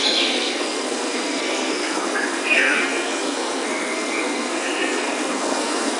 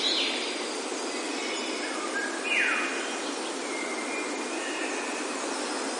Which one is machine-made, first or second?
first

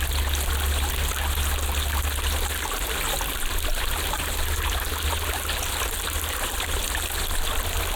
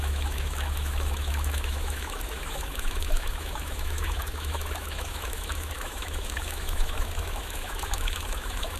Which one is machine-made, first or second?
second